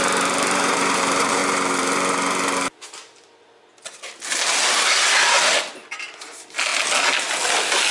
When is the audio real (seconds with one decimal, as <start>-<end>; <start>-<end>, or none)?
1.4-6.1; 6.7-7.9